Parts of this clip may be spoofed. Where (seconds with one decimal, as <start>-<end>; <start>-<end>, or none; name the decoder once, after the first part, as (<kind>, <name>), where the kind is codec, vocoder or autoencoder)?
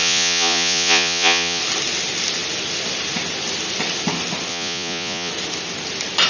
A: 0.0-1.6 (vocoder, Vocos); 4.5-5.3